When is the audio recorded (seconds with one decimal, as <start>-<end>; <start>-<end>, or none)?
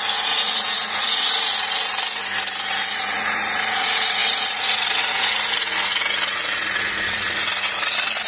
2.2-2.9